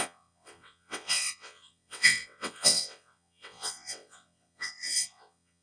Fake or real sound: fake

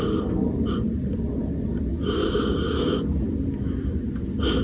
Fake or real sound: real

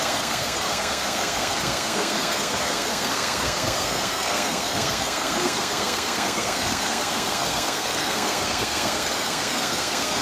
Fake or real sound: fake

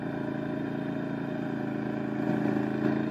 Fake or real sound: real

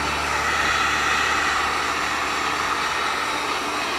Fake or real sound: real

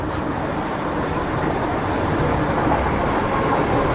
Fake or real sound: real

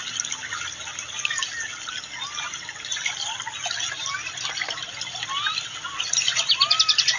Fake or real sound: real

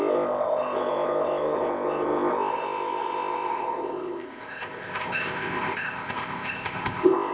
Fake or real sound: fake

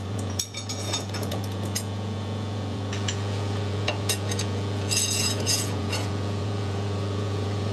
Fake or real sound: fake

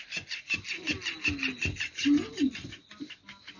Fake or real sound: real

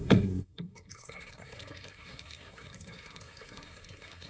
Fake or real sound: fake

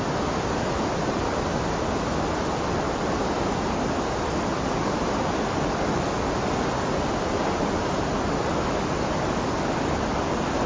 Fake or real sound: real